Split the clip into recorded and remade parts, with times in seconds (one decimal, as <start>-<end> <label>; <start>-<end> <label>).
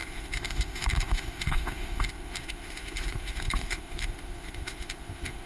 0.0-5.5 remade